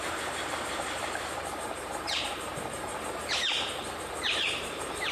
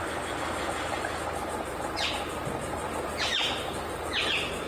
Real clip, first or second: second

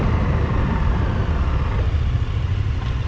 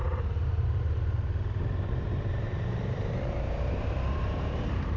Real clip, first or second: first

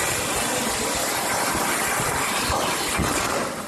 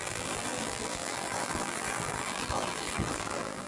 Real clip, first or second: first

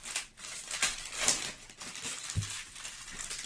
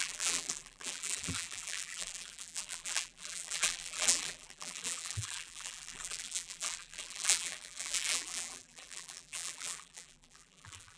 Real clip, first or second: first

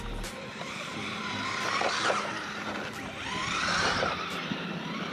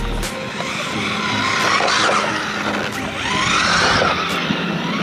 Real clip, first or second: second